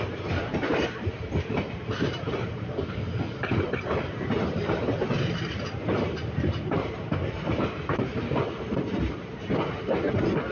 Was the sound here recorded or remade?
remade